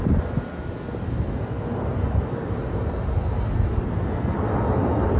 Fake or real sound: real